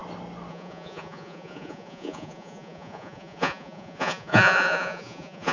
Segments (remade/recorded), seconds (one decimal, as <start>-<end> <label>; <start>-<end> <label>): 0.0-0.5 recorded; 0.5-5.5 remade